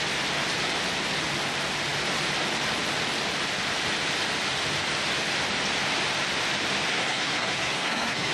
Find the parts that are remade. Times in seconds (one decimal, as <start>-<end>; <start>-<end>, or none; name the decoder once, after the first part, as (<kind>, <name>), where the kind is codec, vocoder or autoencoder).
6.9-8.3 (codec, SNAC)